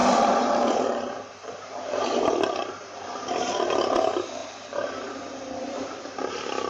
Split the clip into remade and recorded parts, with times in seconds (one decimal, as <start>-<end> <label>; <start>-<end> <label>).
0.0-4.0 remade; 4.0-4.4 recorded; 4.4-6.3 remade; 6.3-6.7 recorded